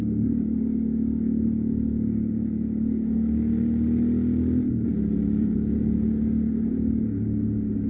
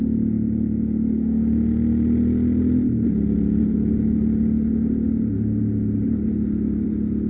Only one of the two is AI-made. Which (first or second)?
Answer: first